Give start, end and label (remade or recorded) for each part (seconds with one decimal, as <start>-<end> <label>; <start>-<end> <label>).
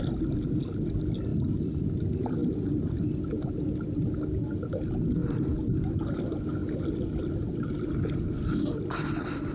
0.0-1.3 recorded; 1.3-2.0 remade; 2.0-5.2 recorded; 5.2-5.9 remade; 5.9-6.6 recorded; 6.6-7.5 remade; 7.5-9.5 recorded